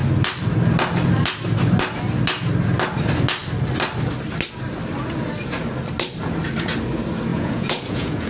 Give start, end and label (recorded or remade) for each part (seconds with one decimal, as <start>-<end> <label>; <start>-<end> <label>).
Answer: 0.0-7.3 recorded; 7.3-8.3 remade